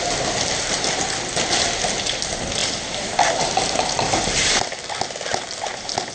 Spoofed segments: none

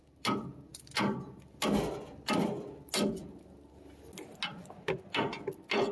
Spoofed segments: none

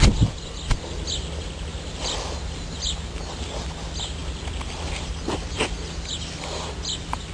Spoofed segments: none

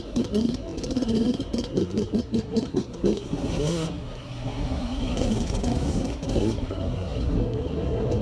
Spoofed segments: 0.0-8.2

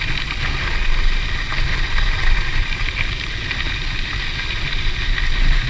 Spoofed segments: none